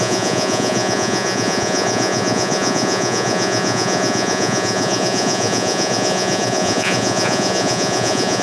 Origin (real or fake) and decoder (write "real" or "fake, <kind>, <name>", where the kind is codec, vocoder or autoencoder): fake, vocoder, Vocos